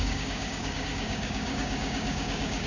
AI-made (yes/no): yes